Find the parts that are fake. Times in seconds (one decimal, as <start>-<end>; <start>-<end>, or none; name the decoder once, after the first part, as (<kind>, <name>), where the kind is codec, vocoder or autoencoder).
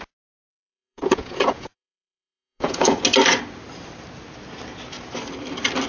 0.5-3.0 (vocoder, Vocos)